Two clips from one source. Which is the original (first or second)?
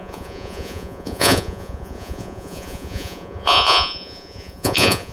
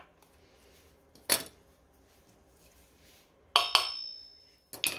second